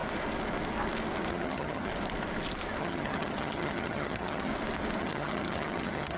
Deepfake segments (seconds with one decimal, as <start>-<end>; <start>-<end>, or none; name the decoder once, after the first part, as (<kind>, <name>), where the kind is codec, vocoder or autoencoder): 1.3-1.9 (vocoder, HiFi-GAN); 2.8-4.5; 5.0-6.2